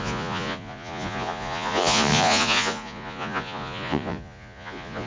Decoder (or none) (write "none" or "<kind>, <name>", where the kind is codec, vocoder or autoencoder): vocoder, Vocos